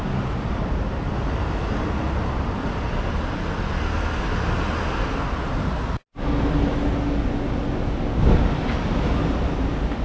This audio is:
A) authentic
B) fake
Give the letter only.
A